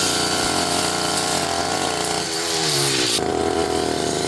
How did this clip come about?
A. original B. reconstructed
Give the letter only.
B